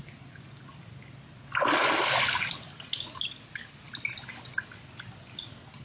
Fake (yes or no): no